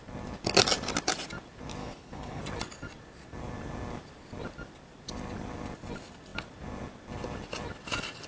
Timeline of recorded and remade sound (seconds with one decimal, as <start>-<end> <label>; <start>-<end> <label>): 0.0-1.8 recorded; 1.8-2.4 remade; 2.4-8.3 recorded